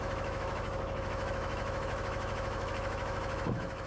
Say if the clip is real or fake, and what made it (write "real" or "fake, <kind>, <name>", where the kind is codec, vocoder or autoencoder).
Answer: fake, autoencoder, DAC-VAE